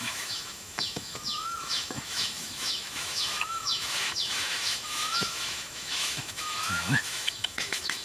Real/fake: fake